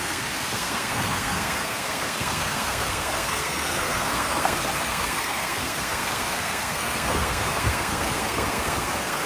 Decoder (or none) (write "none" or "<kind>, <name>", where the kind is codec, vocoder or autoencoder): codec, SNAC